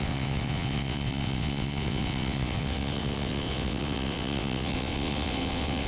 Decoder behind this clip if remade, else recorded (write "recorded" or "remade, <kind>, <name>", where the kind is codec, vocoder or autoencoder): remade, vocoder, WaveNeXt